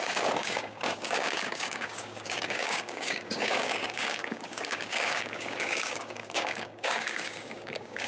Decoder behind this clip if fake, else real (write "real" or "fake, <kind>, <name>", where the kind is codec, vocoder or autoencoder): fake, codec, DAC